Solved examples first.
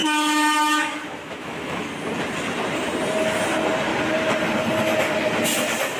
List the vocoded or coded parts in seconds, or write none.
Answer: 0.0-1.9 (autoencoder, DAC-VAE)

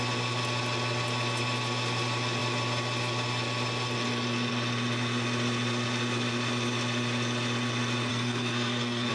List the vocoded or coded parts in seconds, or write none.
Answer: 8.1-9.1 (codec, SNAC)

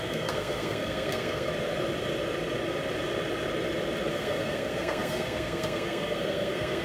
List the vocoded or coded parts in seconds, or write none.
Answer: 0.0-1.5 (codec, SNAC); 4.1-6.8

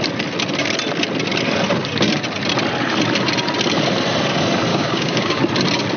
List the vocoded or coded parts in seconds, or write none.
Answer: 4.7-5.4 (codec, DAC)

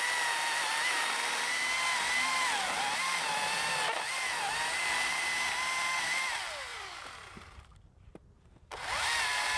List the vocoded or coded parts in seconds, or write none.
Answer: 6.7-8.9 (vocoder, BigVGAN v2)